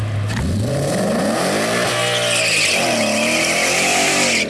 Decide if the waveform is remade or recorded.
recorded